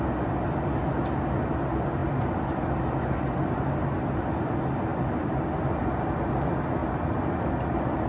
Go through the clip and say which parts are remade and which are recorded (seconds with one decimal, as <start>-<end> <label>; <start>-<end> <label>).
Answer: 0.0-4.9 recorded; 4.9-5.6 remade; 5.6-6.8 recorded; 6.8-7.4 remade; 7.4-8.1 recorded